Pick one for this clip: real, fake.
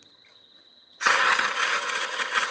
fake